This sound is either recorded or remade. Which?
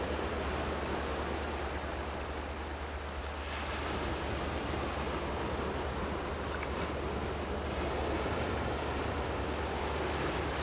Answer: recorded